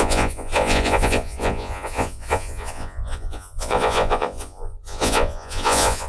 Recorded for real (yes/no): no